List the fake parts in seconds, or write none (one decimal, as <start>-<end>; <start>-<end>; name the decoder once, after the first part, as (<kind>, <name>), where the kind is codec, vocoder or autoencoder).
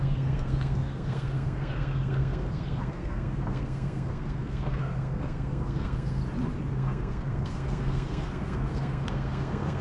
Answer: 0.0-6.2 (codec, SNAC); 6.7-9.8